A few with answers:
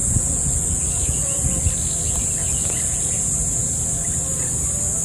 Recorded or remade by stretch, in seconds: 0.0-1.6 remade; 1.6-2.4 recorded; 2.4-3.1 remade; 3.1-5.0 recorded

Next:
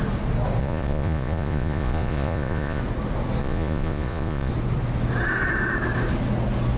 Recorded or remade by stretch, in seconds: 0.0-0.6 recorded; 0.6-2.8 remade; 2.8-3.4 recorded; 3.4-4.5 remade; 4.5-6.8 recorded